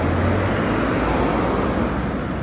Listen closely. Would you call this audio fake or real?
real